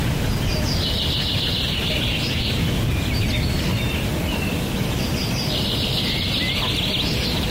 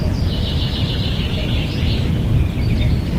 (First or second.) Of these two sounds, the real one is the first